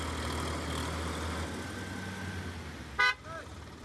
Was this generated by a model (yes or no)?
no